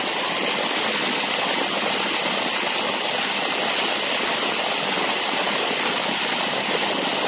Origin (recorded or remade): recorded